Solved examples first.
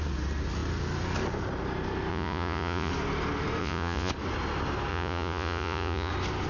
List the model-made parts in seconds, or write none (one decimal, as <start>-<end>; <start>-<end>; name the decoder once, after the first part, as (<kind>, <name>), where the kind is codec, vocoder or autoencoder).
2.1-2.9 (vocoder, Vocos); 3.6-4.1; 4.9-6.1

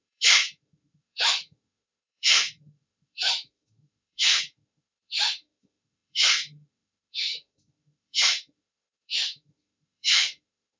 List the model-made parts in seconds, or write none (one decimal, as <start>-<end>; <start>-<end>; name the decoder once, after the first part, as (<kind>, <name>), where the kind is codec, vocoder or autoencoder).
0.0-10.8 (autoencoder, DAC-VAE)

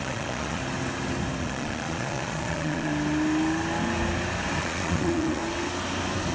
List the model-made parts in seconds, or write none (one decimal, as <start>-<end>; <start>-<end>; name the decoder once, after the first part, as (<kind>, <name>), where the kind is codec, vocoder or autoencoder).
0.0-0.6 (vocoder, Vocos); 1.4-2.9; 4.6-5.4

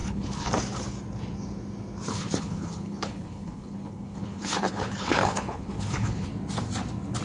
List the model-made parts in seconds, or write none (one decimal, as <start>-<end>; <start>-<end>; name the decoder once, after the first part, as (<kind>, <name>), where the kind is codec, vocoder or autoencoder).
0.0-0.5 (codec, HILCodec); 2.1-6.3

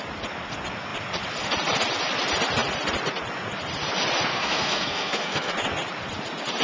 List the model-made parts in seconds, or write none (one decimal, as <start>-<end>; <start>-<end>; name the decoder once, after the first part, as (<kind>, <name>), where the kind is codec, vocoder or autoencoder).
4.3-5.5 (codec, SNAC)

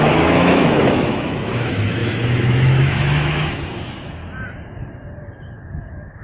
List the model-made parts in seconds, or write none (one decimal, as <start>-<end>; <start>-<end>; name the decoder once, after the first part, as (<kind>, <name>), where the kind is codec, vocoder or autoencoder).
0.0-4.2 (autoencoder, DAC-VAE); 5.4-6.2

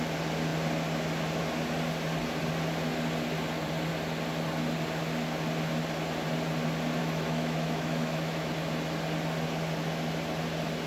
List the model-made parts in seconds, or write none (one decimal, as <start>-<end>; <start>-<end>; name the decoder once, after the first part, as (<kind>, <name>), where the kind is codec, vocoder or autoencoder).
7.0-8.5 (autoencoder, DAC-VAE)